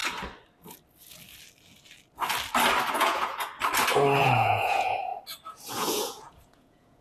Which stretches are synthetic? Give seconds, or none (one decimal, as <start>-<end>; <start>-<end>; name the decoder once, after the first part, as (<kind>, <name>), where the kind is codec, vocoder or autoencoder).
2.9-3.5 (vocoder, Vocos); 4.2-5.1; 5.7-7.0